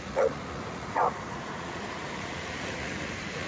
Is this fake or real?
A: fake